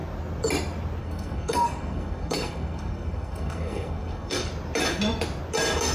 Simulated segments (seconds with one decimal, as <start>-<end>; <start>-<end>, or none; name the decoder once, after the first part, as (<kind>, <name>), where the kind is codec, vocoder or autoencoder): 1.0-4.5 (codec, SNAC)